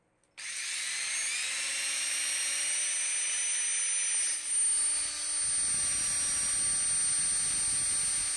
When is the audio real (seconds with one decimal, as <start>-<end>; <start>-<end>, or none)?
0.0-8.4